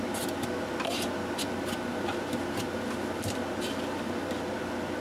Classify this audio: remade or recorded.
recorded